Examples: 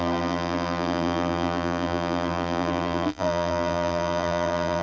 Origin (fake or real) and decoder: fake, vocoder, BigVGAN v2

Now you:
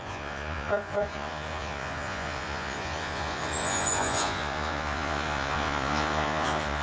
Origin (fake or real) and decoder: fake, vocoder, Vocos